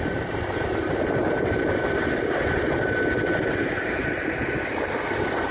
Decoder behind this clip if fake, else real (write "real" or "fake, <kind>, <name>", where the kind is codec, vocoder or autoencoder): real